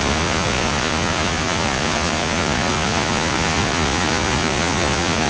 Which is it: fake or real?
fake